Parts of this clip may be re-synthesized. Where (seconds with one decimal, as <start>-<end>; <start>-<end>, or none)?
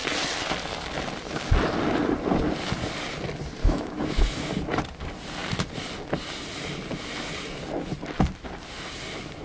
3.6-4.5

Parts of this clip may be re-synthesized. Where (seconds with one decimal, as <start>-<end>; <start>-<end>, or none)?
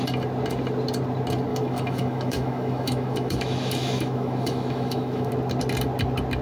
1.5-5.3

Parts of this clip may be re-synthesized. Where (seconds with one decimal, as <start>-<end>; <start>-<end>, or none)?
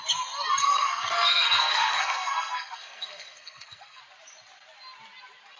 0.6-4.0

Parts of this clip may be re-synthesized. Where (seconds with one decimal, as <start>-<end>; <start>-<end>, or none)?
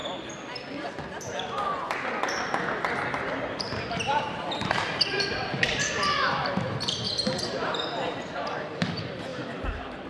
3.3-9.3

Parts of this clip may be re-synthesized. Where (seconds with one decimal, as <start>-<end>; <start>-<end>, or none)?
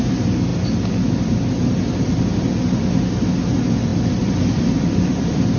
3.9-5.6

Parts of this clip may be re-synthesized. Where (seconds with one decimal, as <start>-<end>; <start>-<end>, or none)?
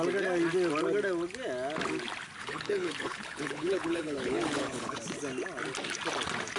2.4-5.0